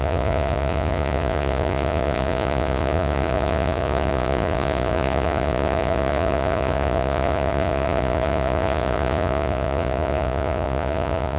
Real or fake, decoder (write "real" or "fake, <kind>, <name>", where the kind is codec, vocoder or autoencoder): fake, vocoder, Vocos